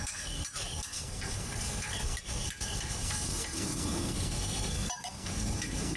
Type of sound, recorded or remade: remade